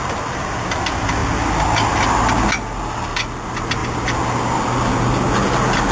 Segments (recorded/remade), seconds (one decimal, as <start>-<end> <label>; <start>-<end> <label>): 0.0-5.9 recorded